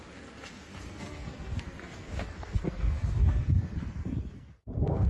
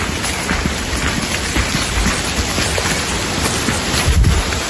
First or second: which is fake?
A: first